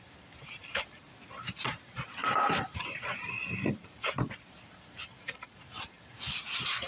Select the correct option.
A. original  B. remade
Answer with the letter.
B